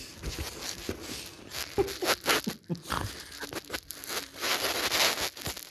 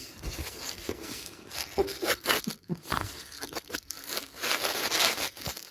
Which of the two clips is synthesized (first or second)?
second